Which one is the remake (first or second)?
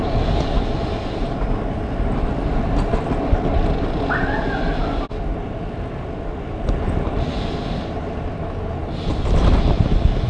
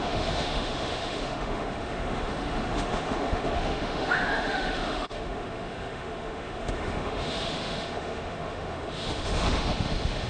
second